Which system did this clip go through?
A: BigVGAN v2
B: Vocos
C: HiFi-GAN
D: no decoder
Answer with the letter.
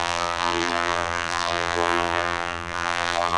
A